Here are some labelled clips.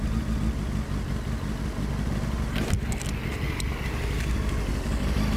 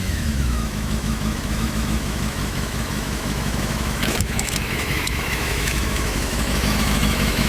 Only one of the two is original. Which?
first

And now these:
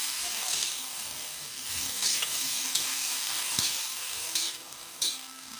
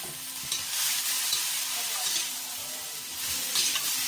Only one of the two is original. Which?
second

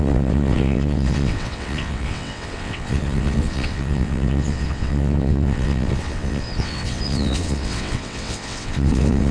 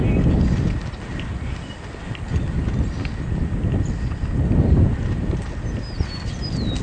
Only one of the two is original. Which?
second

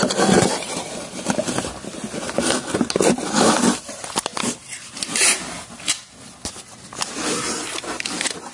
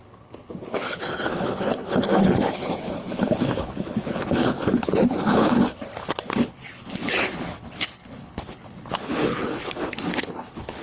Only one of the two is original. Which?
first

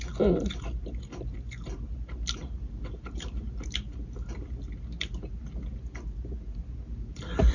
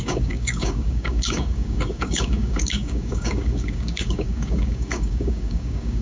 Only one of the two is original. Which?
first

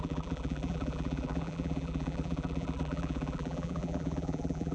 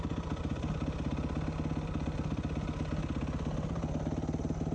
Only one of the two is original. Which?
second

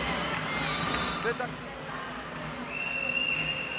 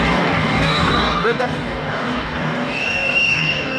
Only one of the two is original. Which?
first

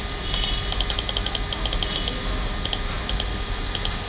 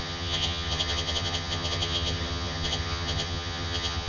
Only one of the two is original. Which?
first